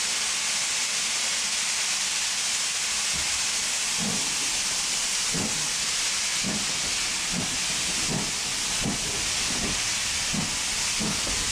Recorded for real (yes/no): yes